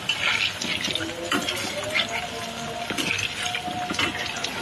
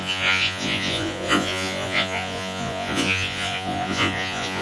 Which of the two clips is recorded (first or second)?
first